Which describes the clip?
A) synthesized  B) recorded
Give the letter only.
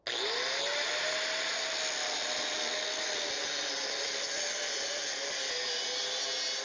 B